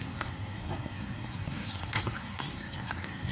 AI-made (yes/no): yes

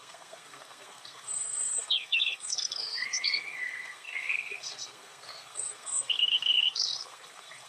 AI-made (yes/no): yes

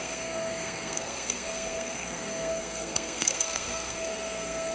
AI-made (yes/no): yes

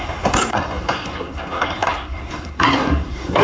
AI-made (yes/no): yes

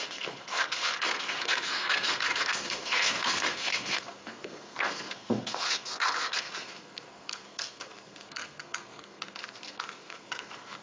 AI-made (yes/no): yes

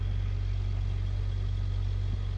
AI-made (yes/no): no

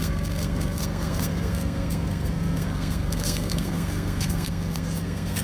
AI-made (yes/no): yes